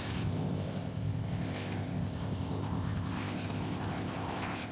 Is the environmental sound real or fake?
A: fake